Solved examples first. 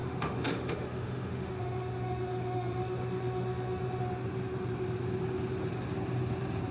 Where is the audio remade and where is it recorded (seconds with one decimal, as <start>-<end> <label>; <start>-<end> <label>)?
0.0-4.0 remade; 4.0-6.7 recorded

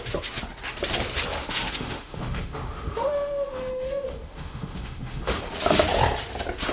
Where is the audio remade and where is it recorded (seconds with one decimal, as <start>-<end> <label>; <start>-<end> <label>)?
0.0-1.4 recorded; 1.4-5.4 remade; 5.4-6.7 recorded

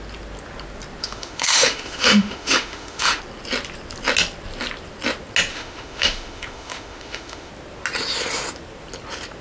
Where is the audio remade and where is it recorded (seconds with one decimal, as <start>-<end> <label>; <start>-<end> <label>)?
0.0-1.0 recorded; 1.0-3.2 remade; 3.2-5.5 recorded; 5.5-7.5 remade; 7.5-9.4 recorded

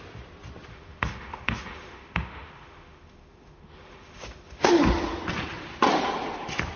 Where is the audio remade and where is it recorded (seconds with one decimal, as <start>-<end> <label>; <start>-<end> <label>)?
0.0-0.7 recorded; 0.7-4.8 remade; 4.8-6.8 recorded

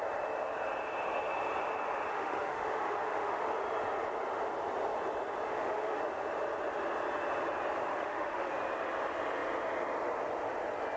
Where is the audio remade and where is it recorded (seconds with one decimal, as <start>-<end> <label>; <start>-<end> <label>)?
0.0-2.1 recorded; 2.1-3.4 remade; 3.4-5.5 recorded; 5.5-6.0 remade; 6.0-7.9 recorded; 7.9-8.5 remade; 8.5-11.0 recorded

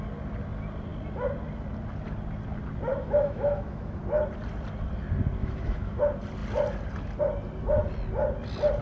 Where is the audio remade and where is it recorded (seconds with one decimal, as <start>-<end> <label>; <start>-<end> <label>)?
0.0-2.9 recorded; 2.9-4.0 remade; 4.0-5.4 recorded; 5.4-6.0 remade; 6.0-8.8 recorded